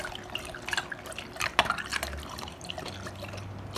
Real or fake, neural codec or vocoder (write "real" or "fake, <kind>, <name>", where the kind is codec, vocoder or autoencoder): real